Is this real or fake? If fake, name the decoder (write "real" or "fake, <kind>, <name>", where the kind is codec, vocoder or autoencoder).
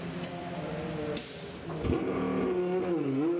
real